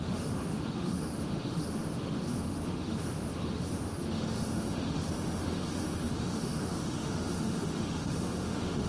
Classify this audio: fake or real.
fake